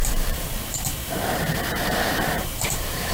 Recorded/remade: remade